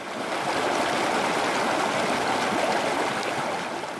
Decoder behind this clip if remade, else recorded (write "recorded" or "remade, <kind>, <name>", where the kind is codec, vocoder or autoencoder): recorded